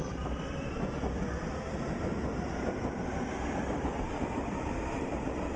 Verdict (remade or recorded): recorded